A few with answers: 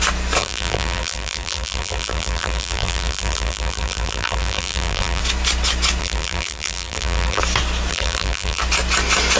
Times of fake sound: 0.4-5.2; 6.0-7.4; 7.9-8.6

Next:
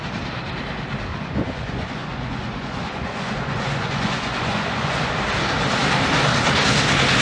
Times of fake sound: 1.1-5.1